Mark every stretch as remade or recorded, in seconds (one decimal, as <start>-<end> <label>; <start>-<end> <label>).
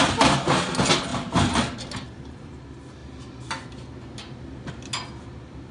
0.0-1.1 recorded; 1.1-2.5 remade; 2.5-5.7 recorded